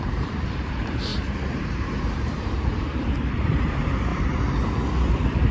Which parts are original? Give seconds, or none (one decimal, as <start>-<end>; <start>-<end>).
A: 4.1-5.1